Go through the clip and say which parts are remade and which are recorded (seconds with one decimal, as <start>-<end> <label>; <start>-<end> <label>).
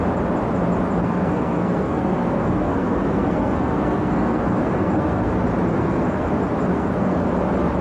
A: 0.0-1.0 recorded; 1.0-5.3 remade; 5.3-5.7 recorded; 5.7-6.3 remade; 6.3-6.7 recorded; 6.7-7.3 remade; 7.3-7.8 recorded